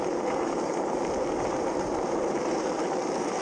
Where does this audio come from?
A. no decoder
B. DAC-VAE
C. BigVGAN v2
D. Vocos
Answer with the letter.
C